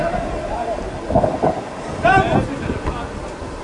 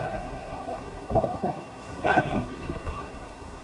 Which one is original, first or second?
first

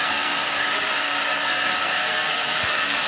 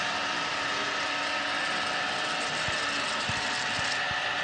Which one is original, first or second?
second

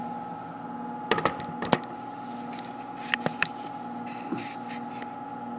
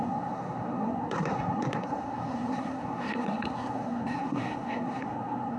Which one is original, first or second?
first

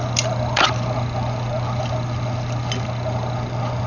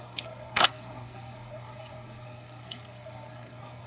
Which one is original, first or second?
first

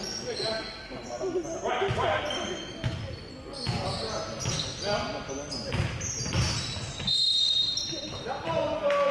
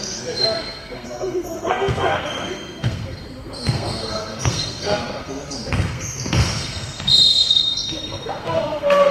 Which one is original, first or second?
first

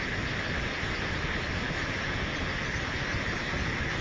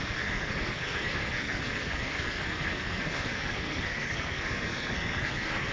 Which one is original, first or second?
first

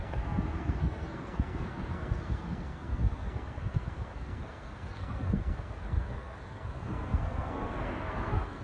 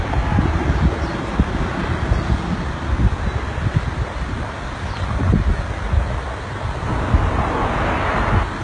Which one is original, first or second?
second